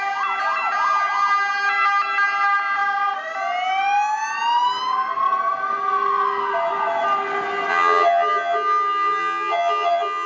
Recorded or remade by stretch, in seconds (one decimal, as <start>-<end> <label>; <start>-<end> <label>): 0.0-7.7 recorded; 7.7-10.3 remade